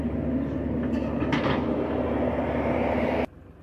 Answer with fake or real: real